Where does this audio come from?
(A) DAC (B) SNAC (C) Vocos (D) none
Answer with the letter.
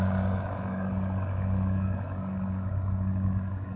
A